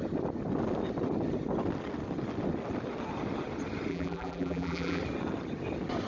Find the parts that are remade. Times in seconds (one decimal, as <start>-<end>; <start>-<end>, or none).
3.9-5.0

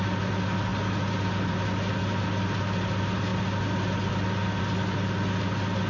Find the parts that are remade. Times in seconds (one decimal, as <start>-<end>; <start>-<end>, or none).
none

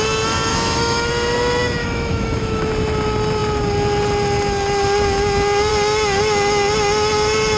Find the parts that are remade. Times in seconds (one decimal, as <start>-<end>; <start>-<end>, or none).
0.5-1.1; 1.8-2.7

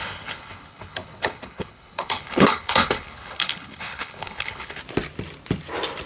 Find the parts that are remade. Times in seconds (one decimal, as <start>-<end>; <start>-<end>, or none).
0.0-4.8

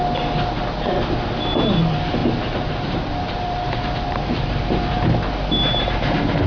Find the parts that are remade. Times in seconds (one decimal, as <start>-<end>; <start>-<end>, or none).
2.2-6.1

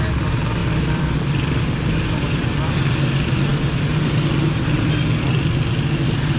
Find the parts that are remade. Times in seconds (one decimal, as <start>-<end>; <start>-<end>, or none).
none

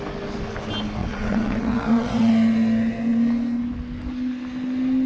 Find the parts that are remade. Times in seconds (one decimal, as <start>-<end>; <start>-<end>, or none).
1.0-2.3

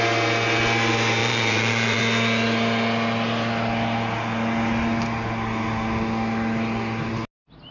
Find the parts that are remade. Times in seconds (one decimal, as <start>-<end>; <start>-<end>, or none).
1.2-2.0